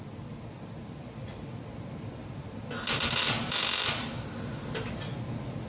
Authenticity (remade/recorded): recorded